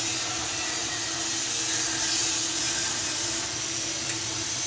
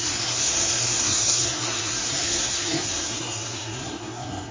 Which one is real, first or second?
first